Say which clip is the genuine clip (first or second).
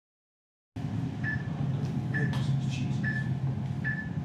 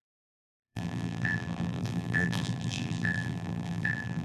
first